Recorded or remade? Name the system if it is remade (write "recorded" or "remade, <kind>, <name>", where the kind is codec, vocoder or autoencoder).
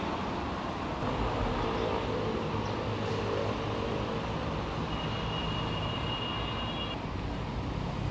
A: recorded